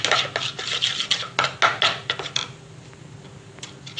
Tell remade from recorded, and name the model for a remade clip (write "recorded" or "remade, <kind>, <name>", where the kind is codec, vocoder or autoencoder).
recorded